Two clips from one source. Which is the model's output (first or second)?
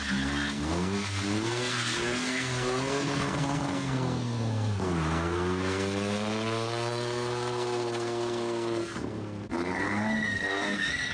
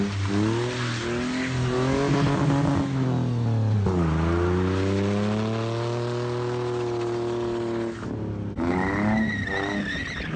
first